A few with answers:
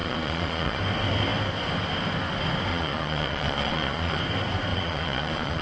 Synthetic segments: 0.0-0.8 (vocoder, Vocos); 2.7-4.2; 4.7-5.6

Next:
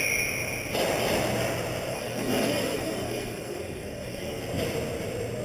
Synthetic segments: 1.9-4.4 (codec, SNAC)

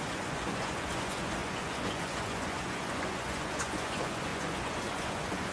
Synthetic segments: 0.0-5.5 (vocoder, Vocos)